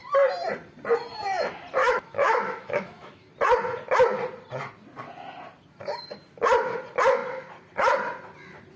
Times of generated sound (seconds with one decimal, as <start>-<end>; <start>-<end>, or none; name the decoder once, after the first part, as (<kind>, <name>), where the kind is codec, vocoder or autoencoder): 1.8-3.3 (autoencoder, DAC-VAE)

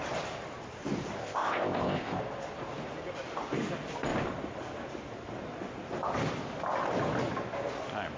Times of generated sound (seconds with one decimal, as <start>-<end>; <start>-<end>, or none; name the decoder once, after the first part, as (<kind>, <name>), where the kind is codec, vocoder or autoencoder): 1.2-2.2 (codec, ZipCodec)

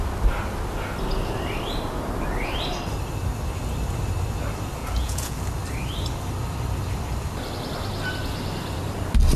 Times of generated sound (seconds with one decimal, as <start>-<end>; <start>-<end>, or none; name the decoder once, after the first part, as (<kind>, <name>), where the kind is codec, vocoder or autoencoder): 4.8-5.4 (vocoder, Vocos)